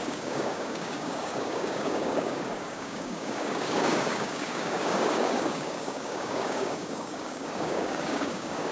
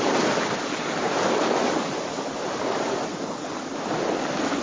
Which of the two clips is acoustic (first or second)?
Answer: second